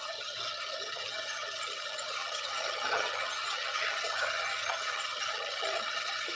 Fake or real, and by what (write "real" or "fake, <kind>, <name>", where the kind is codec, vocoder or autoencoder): fake, vocoder, HiFi-GAN